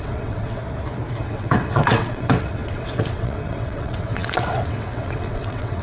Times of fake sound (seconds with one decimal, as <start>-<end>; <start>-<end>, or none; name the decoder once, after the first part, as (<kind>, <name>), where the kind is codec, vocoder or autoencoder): 0.0-0.6 (vocoder, WaveNeXt); 1.2-5.8